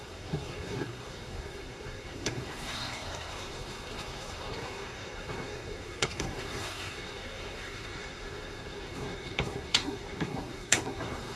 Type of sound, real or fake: fake